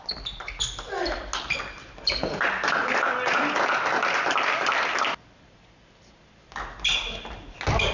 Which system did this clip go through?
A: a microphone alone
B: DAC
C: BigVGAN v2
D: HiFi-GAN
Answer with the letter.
A